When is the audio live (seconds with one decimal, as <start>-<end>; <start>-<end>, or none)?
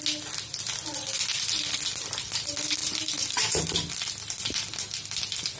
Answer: 0.0-5.6